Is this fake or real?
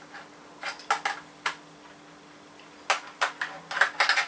real